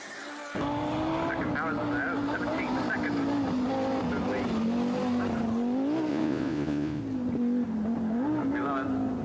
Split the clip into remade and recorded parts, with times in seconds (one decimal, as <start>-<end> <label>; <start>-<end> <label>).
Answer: 0.0-6.1 recorded; 6.1-7.0 remade; 7.0-9.2 recorded